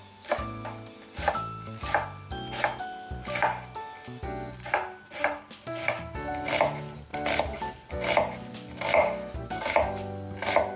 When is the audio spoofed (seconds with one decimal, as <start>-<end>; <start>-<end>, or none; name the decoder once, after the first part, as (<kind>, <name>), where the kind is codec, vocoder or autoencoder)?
none